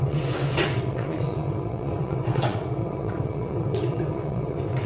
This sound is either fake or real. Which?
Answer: fake